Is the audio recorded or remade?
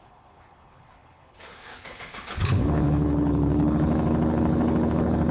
remade